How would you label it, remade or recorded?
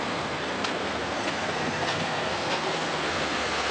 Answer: remade